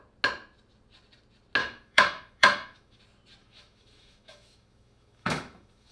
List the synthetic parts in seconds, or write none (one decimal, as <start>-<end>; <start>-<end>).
1.6-3.0; 3.4-5.9